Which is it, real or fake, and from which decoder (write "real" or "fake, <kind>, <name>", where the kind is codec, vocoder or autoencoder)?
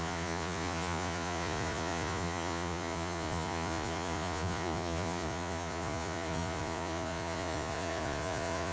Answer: fake, vocoder, Vocos